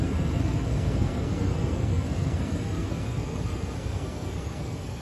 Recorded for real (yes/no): no